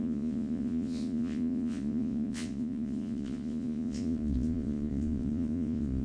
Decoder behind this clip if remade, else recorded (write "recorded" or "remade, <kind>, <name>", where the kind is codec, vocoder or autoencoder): remade, vocoder, Vocos